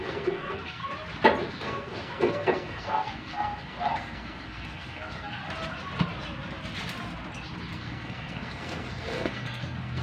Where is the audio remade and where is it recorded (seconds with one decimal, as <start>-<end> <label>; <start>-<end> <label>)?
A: 0.0-0.8 remade; 0.8-1.5 recorded; 1.5-5.4 remade; 5.4-7.7 recorded; 7.7-10.0 remade